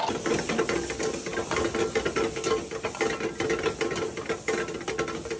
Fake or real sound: real